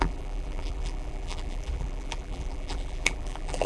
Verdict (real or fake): fake